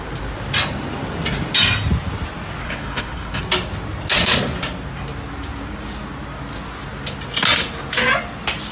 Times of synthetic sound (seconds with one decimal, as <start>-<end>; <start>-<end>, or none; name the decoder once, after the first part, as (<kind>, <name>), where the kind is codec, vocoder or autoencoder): 2.6-3.4 (codec, HILCodec)